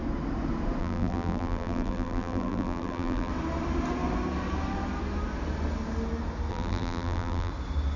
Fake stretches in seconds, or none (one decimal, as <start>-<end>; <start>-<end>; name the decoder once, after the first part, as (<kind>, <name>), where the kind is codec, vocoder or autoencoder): 0.8-3.3 (vocoder, BigVGAN v2); 6.5-7.5